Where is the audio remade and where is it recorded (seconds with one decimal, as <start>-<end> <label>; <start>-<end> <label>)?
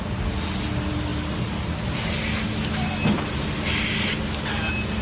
0.0-5.0 recorded